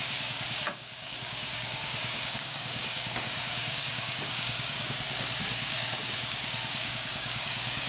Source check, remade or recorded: remade